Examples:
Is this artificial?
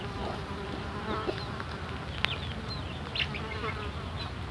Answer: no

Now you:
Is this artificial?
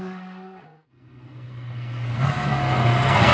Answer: yes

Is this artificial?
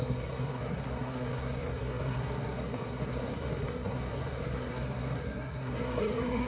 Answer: yes